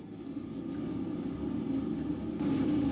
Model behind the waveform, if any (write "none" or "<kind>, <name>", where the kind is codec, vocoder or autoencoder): none